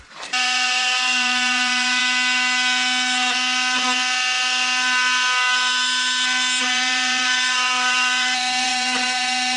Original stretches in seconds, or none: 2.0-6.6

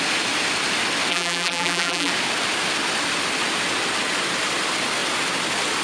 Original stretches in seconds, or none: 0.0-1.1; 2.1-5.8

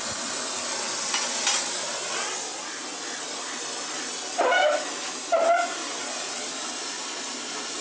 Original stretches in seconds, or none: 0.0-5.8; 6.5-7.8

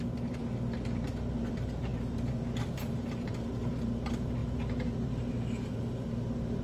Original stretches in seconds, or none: 0.4-1.5

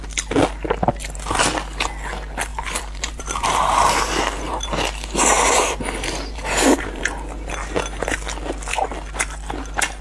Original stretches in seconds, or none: 0.0-2.5; 7.0-10.0

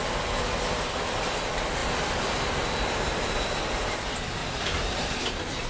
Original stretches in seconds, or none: 0.0-4.4; 5.2-5.7

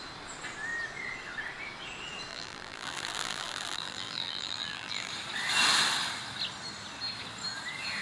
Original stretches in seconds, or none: 0.0-2.3; 5.1-8.0